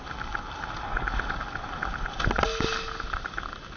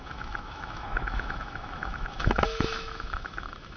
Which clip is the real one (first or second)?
first